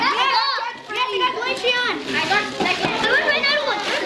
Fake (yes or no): no